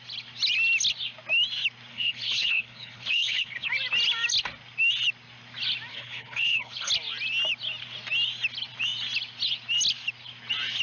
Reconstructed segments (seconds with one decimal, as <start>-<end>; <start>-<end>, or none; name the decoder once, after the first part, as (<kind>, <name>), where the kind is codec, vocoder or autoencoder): 1.9-3.7 (codec, HILCodec); 5.9-6.9